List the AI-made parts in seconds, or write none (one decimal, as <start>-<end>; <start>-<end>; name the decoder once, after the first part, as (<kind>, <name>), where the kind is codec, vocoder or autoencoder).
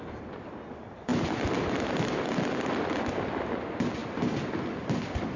none